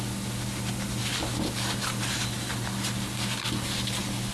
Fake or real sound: real